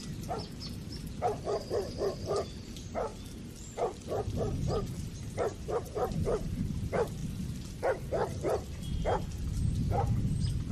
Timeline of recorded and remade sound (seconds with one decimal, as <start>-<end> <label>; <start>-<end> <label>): 0.0-3.1 remade; 3.1-4.9 recorded; 4.9-7.2 remade; 7.2-7.7 recorded; 7.7-10.7 remade